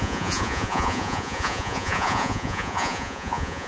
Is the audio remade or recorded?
remade